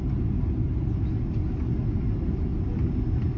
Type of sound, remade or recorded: recorded